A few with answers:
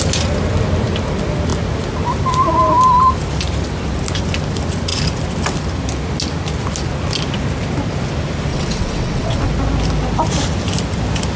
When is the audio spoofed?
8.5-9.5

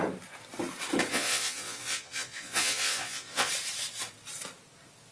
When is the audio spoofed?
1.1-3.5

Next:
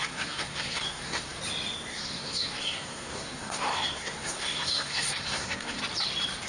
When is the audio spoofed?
0.0-1.4; 1.9-5.8